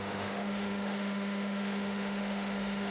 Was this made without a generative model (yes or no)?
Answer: no